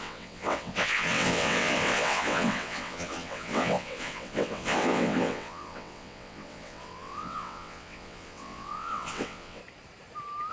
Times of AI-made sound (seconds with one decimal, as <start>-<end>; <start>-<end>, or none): 0.0-9.6